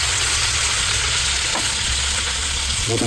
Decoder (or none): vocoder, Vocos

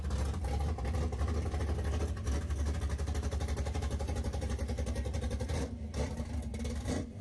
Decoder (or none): none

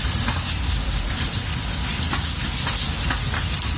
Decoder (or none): none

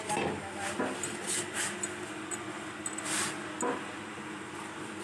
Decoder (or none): none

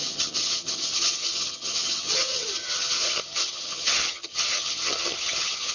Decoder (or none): vocoder, HiFi-GAN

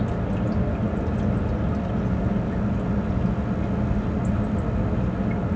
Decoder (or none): none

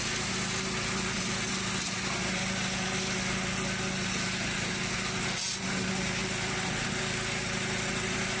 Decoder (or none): none